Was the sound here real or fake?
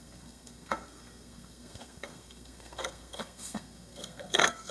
fake